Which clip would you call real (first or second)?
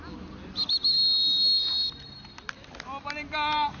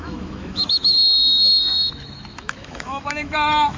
first